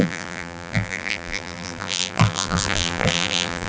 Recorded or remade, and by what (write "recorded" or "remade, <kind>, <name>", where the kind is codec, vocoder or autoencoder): remade, vocoder, BigVGAN v2